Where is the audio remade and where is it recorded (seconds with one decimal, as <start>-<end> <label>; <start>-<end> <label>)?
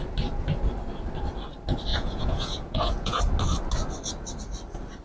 0.0-1.9 recorded; 1.9-3.2 remade; 3.2-5.0 recorded